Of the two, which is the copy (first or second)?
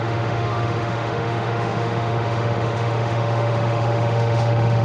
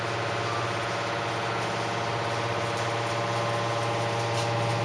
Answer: first